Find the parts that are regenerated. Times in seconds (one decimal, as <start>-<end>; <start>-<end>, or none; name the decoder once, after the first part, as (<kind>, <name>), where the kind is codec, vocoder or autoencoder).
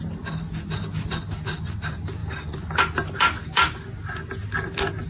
none